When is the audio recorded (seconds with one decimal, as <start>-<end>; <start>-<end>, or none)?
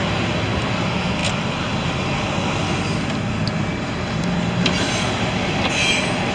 0.0-6.3